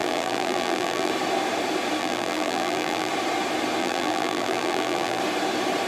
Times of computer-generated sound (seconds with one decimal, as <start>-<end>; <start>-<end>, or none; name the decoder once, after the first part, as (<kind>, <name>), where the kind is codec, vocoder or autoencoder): 0.0-1.1 (vocoder, BigVGAN v2); 2.0-3.1; 3.8-5.2